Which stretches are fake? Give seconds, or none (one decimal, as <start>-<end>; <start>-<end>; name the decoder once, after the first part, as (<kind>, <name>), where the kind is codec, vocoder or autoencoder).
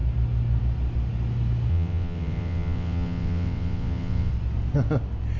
1.7-4.3 (vocoder, WaveNeXt)